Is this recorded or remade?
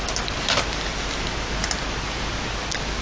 recorded